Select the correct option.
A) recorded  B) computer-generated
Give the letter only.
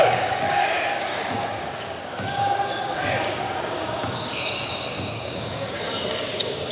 B